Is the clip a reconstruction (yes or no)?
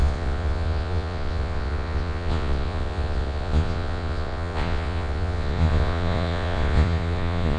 yes